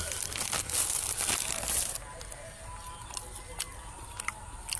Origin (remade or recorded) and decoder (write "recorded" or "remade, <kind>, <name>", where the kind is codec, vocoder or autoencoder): recorded